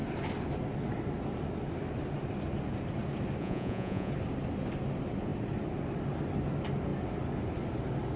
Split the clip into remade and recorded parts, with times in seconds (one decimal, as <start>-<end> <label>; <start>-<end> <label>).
0.0-3.4 recorded; 3.4-4.1 remade; 4.1-8.2 recorded